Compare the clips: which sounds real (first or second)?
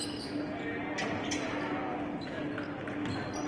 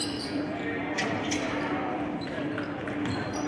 first